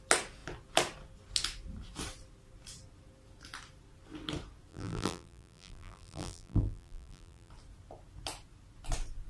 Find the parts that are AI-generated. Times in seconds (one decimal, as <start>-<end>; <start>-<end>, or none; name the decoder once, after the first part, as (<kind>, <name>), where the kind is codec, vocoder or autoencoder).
4.7-7.5 (vocoder, BigVGAN v2)